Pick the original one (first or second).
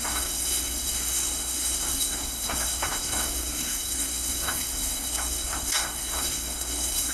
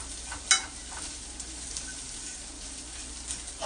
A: second